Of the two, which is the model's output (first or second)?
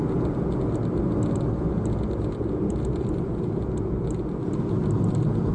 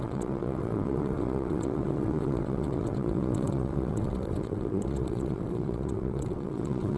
second